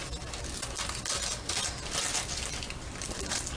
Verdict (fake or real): real